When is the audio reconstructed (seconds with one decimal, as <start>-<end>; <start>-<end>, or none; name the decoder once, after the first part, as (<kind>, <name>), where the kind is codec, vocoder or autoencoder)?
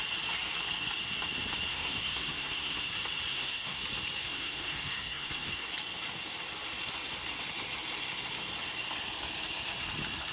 1.7-2.9 (codec, SNAC); 3.3-3.8; 4.2-5.7